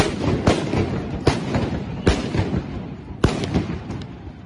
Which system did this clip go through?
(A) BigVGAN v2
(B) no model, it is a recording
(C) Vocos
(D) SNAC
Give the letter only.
B